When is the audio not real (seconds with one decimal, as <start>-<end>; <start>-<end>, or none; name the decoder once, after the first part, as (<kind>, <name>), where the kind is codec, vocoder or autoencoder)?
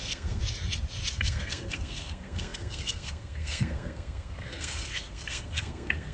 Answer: 0.0-0.4 (codec, SNAC); 1.1-6.1